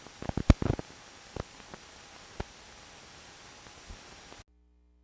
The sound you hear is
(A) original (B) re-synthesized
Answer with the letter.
A